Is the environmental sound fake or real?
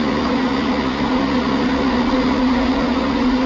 fake